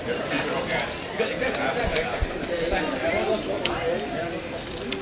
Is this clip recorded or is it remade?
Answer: recorded